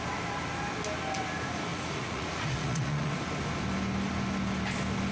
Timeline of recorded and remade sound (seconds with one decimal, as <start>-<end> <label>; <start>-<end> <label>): 0.0-1.7 recorded; 1.7-3.1 remade; 3.1-5.1 recorded